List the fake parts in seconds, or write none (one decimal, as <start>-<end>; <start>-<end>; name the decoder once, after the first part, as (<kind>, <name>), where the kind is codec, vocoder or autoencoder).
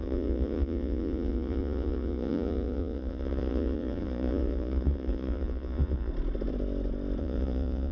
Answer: 0.0-6.1 (vocoder, Vocos); 7.2-7.9